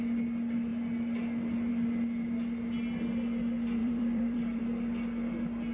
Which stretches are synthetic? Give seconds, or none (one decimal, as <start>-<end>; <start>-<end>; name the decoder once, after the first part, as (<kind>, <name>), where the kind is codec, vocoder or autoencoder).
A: 3.8-4.6 (vocoder, BigVGAN v2)